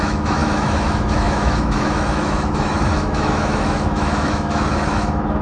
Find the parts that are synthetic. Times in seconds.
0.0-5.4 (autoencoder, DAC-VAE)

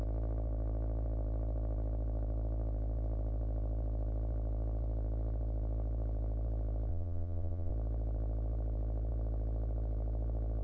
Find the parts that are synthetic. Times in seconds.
6.9-7.7 (vocoder, Vocos)